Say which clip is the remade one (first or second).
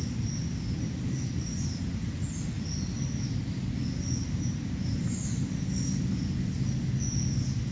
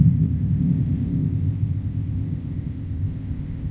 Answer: second